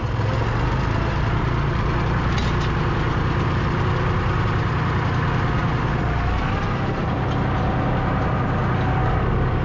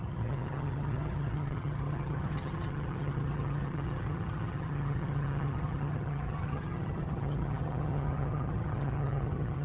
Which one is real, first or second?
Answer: first